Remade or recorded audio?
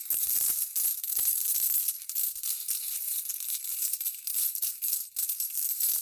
remade